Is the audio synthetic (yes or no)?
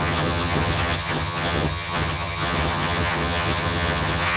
yes